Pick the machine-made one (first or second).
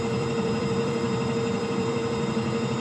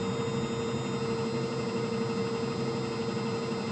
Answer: first